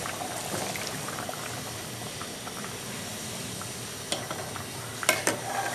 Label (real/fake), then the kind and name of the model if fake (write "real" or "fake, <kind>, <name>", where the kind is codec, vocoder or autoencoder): real